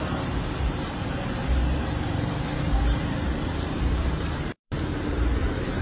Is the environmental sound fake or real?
fake